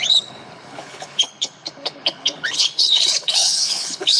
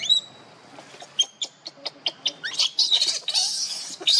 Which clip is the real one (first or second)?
second